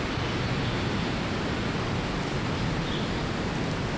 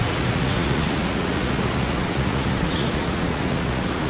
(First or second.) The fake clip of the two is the second